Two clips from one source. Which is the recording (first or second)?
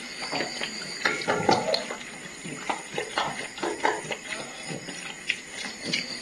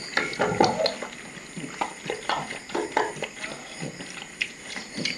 second